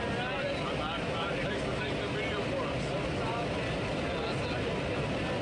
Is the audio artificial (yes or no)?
no